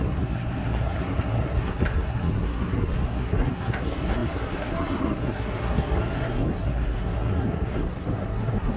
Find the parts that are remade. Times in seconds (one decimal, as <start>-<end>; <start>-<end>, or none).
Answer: 0.0-8.8